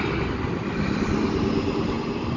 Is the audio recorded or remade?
recorded